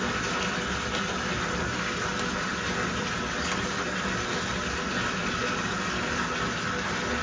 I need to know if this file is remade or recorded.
recorded